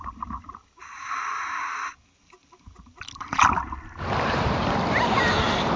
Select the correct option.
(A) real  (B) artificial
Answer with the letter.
A